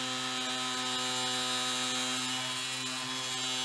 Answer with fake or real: real